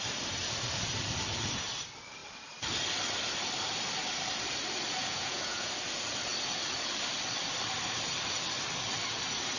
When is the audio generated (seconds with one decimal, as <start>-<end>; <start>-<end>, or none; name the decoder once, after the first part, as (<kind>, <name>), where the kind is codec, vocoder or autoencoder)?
5.0-5.7 (vocoder, Vocos)